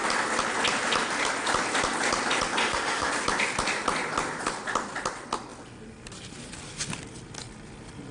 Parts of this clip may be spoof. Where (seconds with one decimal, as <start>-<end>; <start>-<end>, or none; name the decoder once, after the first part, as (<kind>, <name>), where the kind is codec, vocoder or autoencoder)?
2.6-3.1 (autoencoder, DAC-VAE)